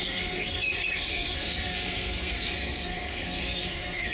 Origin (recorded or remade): remade